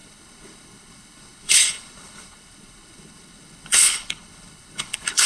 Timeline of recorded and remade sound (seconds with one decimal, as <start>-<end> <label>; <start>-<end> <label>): 0.0-5.3 remade